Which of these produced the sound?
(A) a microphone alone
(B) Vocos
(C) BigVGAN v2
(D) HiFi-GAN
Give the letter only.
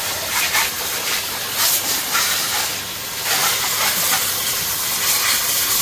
A